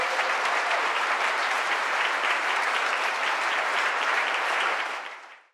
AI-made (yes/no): yes